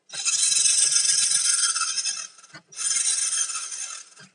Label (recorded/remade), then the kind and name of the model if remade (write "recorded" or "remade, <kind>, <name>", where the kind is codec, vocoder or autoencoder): recorded